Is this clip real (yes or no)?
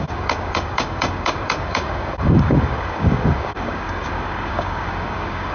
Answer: no